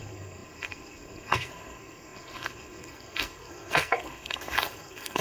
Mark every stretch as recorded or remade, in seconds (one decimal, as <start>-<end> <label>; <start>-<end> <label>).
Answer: 0.0-5.2 remade